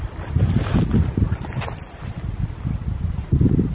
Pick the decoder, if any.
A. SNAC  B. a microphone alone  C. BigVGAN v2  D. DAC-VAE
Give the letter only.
B